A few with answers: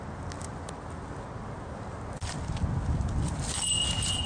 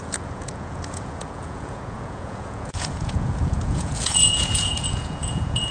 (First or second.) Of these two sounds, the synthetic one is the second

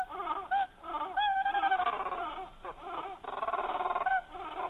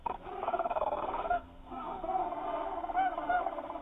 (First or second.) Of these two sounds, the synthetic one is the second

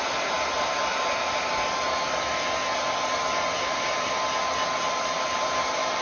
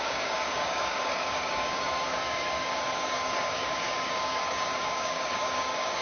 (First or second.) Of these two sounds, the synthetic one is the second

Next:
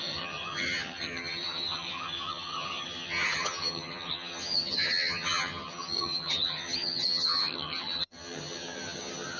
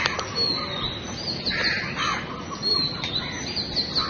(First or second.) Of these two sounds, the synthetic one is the first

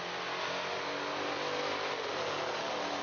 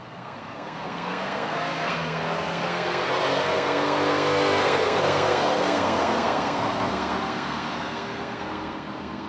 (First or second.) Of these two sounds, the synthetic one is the second